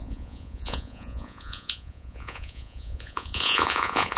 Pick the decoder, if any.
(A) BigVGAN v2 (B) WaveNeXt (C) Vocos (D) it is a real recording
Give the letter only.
C